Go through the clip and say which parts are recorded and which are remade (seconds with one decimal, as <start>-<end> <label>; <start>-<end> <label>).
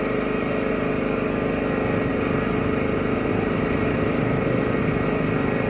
0.0-2.1 recorded; 2.1-2.6 remade; 2.6-3.3 recorded; 3.3-4.8 remade; 4.8-5.7 recorded